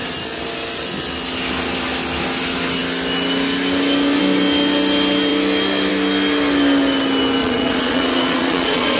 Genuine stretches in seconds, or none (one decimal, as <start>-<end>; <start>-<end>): 0.0-7.4